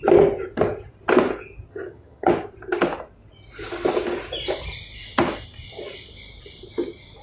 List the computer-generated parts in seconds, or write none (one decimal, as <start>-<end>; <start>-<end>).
1.7-2.3